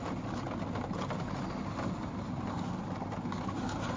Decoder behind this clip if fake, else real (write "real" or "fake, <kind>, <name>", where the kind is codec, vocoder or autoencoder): real